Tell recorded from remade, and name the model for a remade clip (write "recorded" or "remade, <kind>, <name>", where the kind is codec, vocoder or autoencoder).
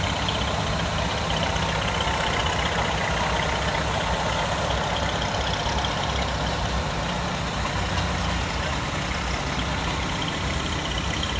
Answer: recorded